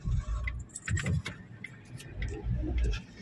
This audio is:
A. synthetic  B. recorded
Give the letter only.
B